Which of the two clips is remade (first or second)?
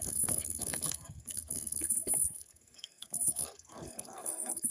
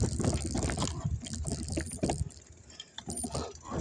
first